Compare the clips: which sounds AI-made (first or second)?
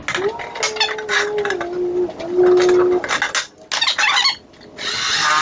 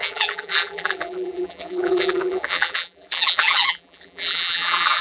second